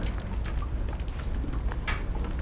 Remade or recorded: recorded